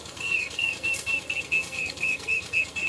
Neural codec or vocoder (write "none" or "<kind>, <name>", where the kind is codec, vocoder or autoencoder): codec, SNAC